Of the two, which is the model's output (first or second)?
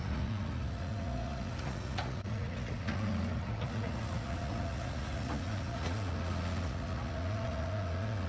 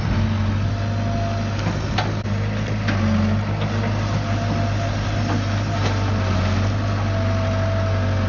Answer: first